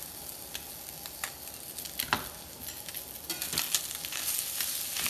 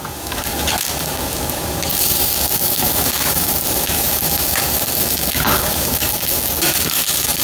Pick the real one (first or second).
first